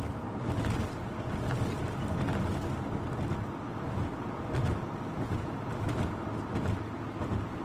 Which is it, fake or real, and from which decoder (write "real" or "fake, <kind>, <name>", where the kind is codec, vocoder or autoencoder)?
real